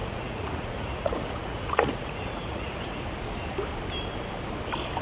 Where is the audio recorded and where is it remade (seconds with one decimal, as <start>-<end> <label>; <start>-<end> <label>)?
0.0-3.0 remade; 3.0-5.0 recorded